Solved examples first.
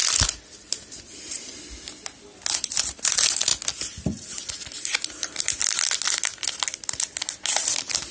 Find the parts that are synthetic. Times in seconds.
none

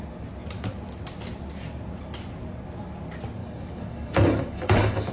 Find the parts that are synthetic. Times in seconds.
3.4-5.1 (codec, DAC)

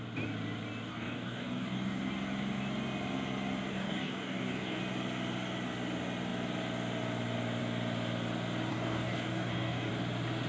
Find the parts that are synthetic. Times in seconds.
0.9-2.0 (codec, DAC); 3.7-4.8; 8.7-9.9